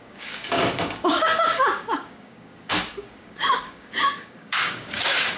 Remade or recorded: remade